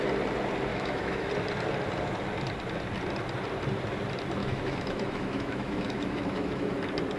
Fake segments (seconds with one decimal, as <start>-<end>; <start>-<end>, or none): 0.7-1.3; 4.4-6.8